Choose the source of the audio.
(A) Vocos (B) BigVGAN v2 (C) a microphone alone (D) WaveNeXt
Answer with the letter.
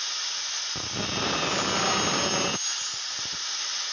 C